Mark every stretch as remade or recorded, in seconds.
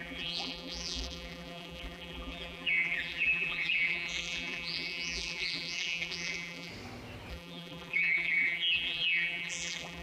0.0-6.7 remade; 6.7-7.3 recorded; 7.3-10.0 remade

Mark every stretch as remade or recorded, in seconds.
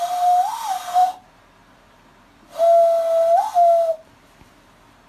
0.0-5.1 recorded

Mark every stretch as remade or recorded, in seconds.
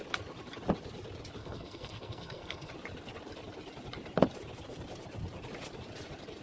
0.0-1.4 recorded; 1.4-2.7 remade; 2.7-6.4 recorded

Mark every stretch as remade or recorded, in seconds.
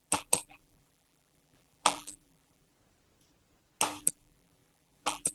0.0-2.7 remade; 2.7-4.0 recorded; 4.0-5.3 remade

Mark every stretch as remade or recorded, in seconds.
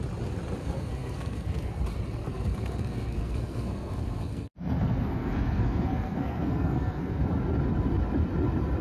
0.0-0.6 recorded; 0.6-1.8 remade; 1.8-2.3 recorded; 2.3-7.2 remade; 7.2-8.8 recorded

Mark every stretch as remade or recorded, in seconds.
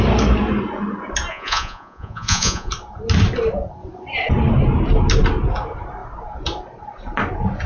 0.0-1.3 recorded; 1.3-2.7 remade; 2.7-7.7 recorded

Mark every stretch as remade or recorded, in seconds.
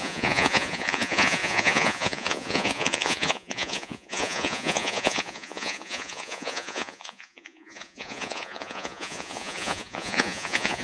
0.0-10.8 remade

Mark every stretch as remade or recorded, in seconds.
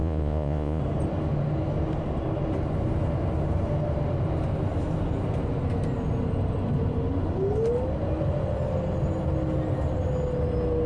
0.0-0.8 remade; 0.8-10.9 recorded